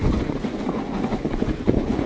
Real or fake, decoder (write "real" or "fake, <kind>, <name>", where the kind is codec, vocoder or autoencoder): fake, vocoder, Vocos